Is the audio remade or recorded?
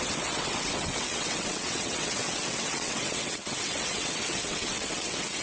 remade